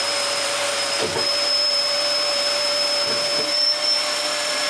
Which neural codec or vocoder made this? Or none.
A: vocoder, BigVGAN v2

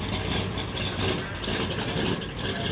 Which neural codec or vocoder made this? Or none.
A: none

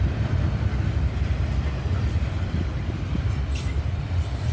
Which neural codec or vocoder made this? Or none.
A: vocoder, BigVGAN v2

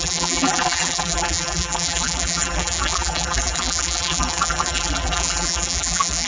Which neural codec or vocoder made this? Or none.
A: vocoder, BigVGAN v2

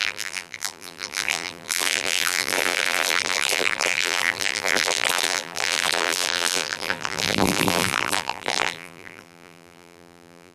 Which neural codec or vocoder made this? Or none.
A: vocoder, BigVGAN v2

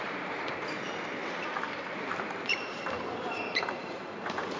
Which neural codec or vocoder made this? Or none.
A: vocoder, BigVGAN v2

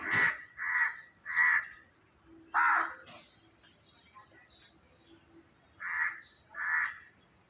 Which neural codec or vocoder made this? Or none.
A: none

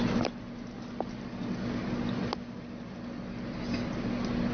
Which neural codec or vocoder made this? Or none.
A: none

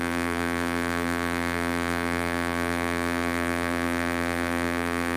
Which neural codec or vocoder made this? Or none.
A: vocoder, BigVGAN v2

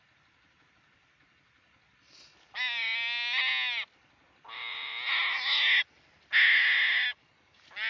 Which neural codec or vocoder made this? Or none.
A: none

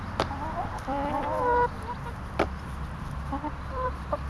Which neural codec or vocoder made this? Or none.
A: vocoder, BigVGAN v2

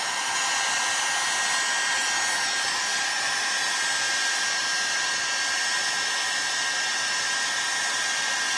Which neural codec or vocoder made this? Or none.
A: none